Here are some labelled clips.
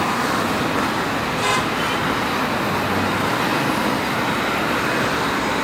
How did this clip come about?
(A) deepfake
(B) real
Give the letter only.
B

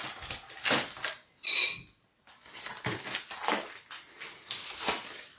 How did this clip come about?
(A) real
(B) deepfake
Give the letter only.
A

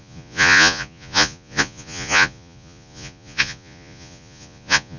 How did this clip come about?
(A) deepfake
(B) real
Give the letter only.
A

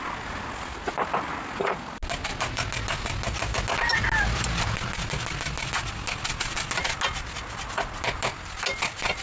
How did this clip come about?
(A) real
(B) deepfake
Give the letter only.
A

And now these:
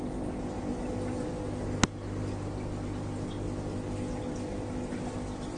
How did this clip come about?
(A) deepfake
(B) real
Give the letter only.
B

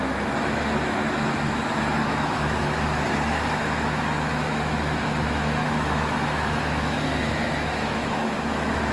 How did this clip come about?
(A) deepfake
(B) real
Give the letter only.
A